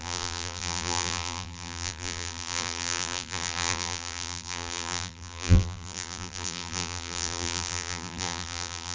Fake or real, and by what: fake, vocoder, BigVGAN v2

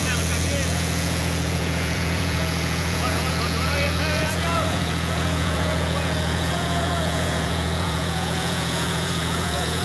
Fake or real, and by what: fake, vocoder, Vocos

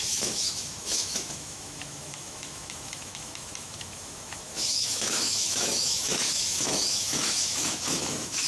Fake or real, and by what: fake, autoencoder, DAC-VAE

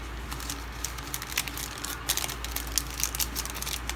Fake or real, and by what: real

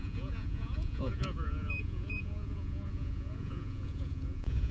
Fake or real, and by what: fake, vocoder, Vocos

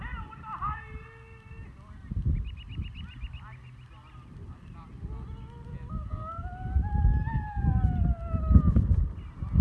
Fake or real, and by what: real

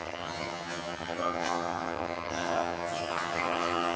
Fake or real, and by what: fake, vocoder, HiFi-GAN